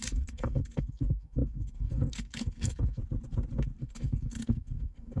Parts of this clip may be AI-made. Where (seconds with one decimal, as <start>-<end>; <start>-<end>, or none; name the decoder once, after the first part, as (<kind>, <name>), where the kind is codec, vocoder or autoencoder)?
0.0-3.0 (codec, SNAC); 3.8-5.2